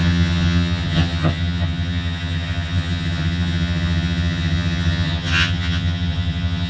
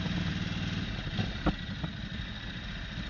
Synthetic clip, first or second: first